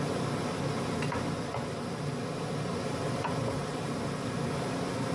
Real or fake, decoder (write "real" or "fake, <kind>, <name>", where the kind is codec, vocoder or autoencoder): real